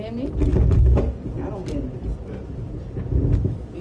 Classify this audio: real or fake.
real